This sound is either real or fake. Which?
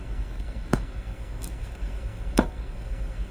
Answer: fake